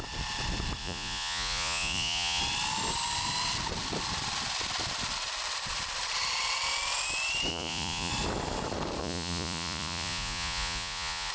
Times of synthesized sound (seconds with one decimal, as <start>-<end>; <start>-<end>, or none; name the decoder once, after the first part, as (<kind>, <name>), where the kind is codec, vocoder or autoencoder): 0.8-2.4 (vocoder, Vocos); 7.5-8.1; 9.0-11.3